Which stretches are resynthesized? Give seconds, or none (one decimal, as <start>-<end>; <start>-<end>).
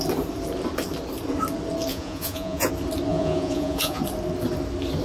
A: 1.9-2.7; 3.1-4.0